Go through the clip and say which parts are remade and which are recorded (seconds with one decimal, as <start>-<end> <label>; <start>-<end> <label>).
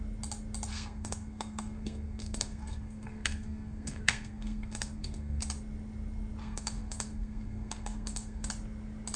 0.0-0.7 recorded; 0.7-5.4 remade; 5.4-6.4 recorded; 6.4-8.5 remade; 8.5-9.2 recorded